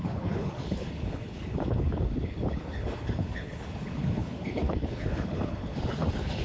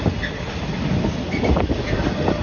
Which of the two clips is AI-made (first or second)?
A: first